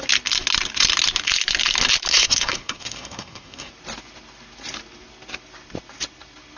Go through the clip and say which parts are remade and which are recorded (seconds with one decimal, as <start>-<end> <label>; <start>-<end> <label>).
0.0-2.1 recorded; 2.1-3.7 remade; 3.7-6.6 recorded